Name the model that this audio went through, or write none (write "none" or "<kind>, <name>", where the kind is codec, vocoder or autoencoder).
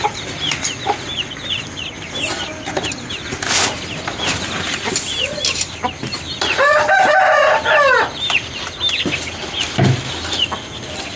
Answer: none